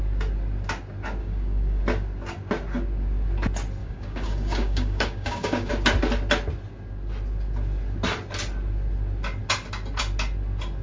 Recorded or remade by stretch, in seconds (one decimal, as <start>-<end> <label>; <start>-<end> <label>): 0.0-1.2 recorded; 1.2-1.8 remade; 1.8-3.8 recorded; 3.8-5.7 remade; 5.7-10.8 recorded